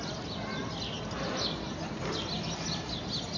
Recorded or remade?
recorded